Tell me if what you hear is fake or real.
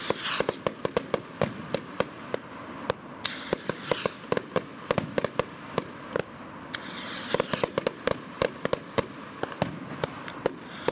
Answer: real